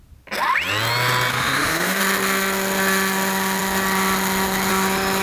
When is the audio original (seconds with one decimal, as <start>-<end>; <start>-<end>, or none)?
0.0-1.3; 2.0-5.2